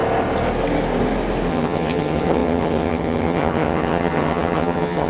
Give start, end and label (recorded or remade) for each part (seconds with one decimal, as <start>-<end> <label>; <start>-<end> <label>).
0.0-1.5 recorded; 1.5-5.1 remade